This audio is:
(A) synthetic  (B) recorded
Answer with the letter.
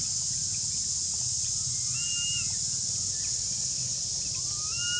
B